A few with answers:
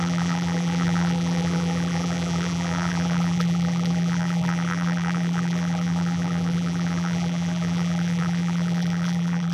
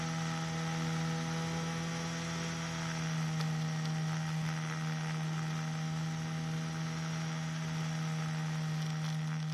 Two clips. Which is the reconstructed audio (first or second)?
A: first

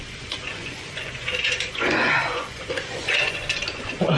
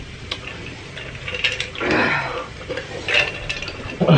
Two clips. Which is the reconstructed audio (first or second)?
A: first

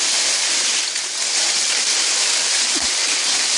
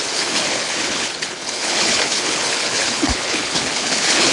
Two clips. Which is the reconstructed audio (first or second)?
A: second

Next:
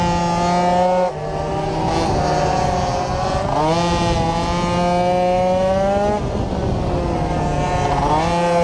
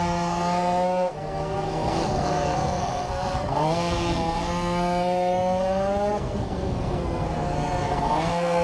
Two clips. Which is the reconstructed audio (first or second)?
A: second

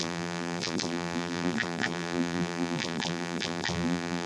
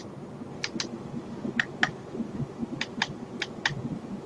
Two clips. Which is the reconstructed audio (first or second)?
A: first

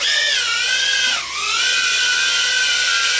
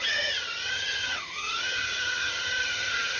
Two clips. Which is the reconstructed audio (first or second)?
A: second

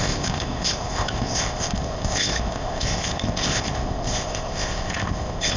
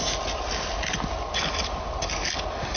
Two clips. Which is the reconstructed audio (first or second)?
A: first